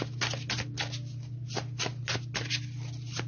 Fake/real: real